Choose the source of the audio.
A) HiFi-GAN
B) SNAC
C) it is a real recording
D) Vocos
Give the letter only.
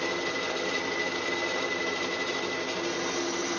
C